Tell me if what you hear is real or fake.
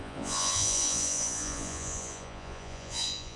fake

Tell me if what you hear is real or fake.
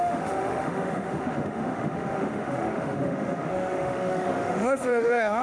fake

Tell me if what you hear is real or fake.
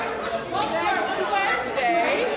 real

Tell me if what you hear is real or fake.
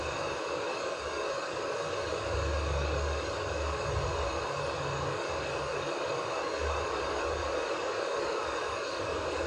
fake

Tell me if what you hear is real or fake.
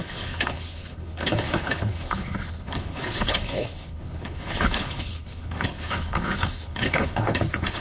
fake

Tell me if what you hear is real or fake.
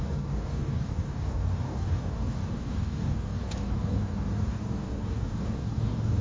fake